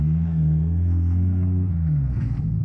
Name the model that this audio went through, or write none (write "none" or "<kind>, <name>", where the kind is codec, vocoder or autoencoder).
codec, SNAC